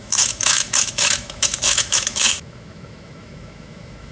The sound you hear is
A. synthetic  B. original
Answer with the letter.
A